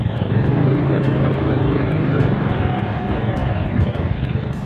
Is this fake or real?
fake